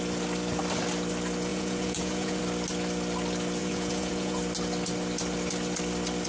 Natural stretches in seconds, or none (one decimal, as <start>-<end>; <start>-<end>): 0.0-1.5; 2.4-3.6; 4.4-6.3